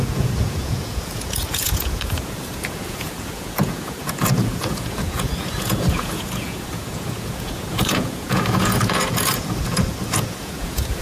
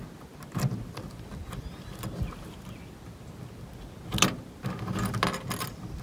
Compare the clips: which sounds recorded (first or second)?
second